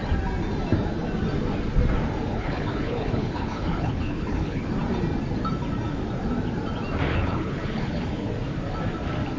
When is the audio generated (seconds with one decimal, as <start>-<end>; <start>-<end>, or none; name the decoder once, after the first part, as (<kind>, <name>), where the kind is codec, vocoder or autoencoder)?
2.3-4.7 (codec, HILCodec); 7.1-8.3